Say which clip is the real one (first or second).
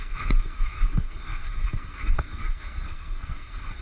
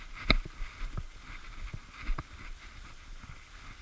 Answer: second